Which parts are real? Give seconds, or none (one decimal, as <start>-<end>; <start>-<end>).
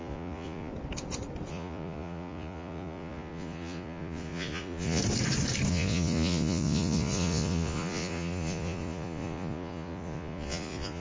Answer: 0.7-1.5; 5.0-5.7